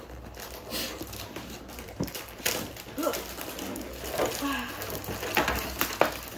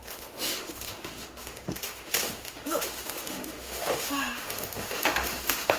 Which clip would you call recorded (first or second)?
first